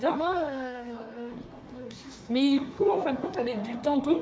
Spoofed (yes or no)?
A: yes